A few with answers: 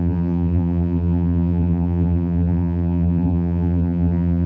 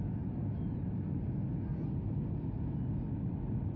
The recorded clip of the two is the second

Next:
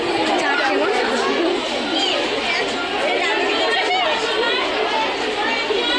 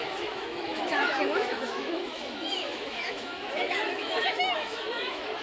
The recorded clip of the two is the first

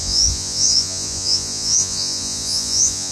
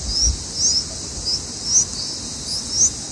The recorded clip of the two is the second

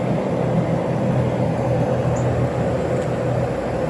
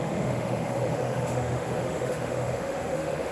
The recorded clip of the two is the first